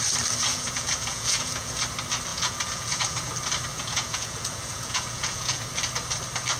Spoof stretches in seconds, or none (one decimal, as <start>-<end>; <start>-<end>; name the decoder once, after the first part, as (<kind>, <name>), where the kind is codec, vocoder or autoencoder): 0.5-1.7 (vocoder, Vocos); 2.3-3.3; 3.7-5.7